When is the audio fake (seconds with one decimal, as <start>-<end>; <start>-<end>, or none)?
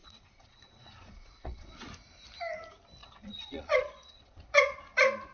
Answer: 0.0-1.9; 3.0-4.8